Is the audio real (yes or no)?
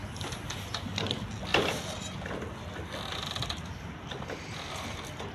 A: yes